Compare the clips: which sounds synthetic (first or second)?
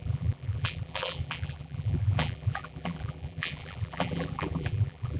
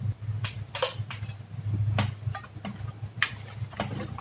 first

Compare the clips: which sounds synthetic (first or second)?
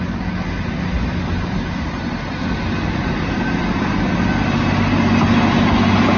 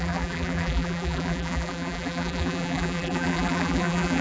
second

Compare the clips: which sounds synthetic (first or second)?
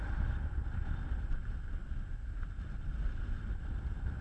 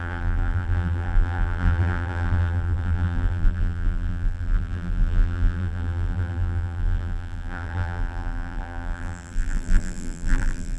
second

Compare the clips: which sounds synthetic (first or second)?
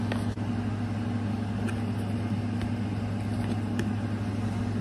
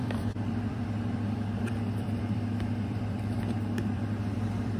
second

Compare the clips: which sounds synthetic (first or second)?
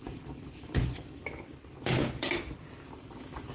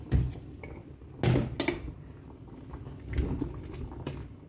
first